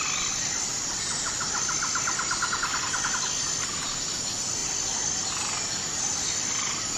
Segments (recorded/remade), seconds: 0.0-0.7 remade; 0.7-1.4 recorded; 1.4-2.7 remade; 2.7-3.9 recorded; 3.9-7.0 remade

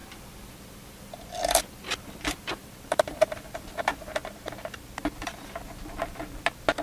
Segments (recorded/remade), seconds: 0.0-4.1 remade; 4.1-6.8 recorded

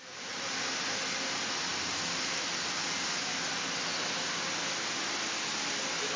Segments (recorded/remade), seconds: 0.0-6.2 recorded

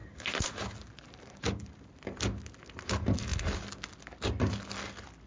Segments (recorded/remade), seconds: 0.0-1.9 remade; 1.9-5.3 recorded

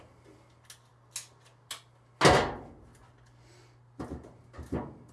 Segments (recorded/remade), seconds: 0.0-5.1 recorded

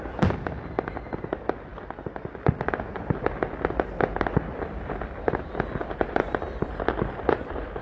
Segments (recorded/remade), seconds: 0.0-7.8 remade

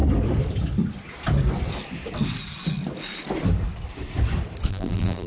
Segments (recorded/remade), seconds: 0.0-4.7 recorded; 4.7-5.3 remade